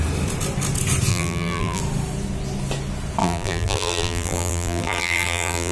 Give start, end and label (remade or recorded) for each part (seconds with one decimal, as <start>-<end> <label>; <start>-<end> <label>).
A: 0.0-1.1 recorded; 1.1-1.8 remade; 1.8-3.2 recorded; 3.2-5.7 remade